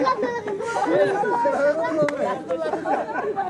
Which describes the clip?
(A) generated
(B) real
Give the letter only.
B